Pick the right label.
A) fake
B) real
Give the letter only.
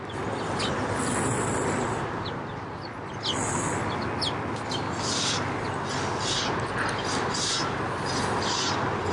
B